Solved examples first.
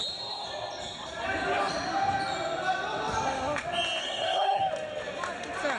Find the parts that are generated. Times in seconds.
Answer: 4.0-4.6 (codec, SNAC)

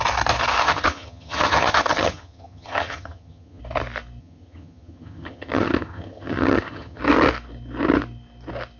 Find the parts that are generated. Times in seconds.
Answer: 0.6-3.6 (vocoder, HiFi-GAN); 4.2-7.0

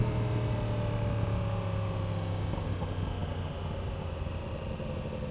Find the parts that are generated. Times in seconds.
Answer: none